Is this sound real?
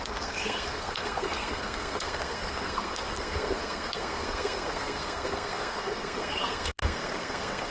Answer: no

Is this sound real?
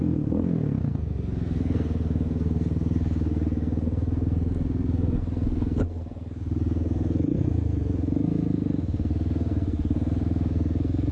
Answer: no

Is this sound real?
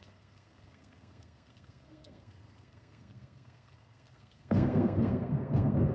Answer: no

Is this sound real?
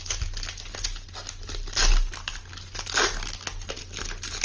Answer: yes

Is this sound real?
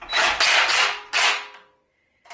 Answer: yes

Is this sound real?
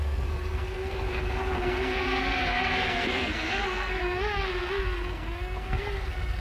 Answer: no